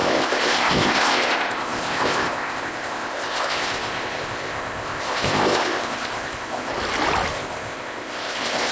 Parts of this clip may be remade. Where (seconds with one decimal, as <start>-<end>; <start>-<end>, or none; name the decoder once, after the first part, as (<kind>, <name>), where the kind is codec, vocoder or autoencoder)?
0.0-6.7 (codec, ZipCodec); 7.3-8.7